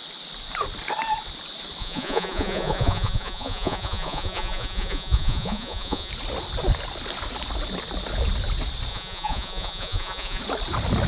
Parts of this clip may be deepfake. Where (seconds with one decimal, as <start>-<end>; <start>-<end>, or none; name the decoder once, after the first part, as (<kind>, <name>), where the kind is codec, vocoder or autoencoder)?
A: 1.8-6.1 (vocoder, Vocos); 8.9-10.4